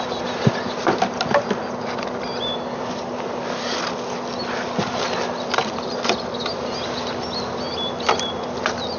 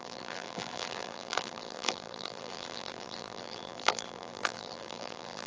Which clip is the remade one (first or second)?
second